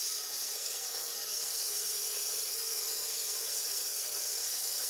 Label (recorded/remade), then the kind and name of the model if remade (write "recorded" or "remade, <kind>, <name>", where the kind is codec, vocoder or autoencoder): remade, codec, SNAC